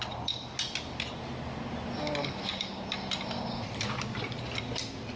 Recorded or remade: recorded